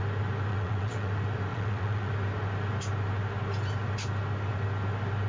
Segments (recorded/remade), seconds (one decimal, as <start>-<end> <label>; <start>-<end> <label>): 0.0-0.5 recorded; 0.5-1.1 remade; 1.1-1.5 recorded; 1.5-2.1 remade; 2.1-5.3 recorded